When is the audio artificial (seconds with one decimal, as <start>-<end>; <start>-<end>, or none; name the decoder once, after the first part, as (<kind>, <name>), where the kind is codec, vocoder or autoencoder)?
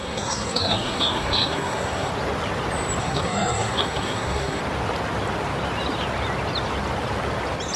0.0-2.1 (codec, SNAC); 3.0-4.6